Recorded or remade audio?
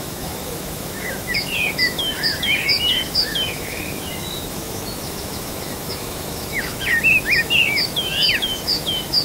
remade